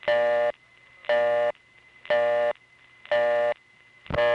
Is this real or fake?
real